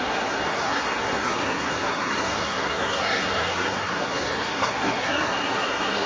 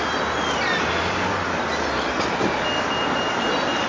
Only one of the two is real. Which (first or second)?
second